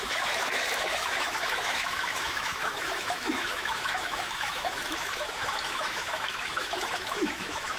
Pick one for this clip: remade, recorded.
remade